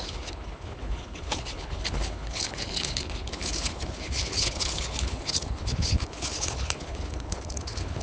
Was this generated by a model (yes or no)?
yes